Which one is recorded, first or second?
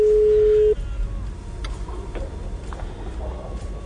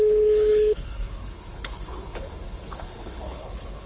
first